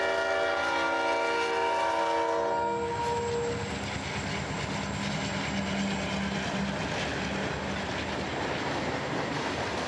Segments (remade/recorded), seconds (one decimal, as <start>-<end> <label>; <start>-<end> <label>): 0.0-9.9 recorded